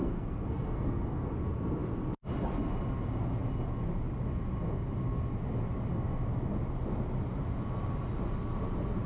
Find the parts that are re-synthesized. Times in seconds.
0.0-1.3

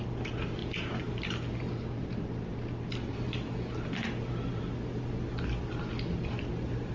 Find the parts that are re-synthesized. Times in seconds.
none

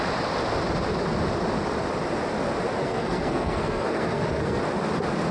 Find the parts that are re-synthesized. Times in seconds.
2.8-4.6

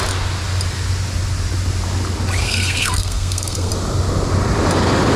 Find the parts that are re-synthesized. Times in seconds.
2.4-3.7

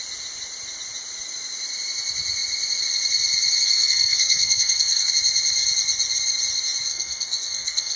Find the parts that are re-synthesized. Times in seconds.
3.7-5.1; 6.9-8.0

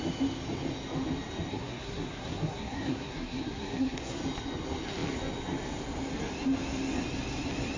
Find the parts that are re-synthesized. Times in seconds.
1.5-4.2